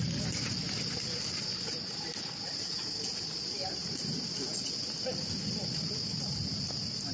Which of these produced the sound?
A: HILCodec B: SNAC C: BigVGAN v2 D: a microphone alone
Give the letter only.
D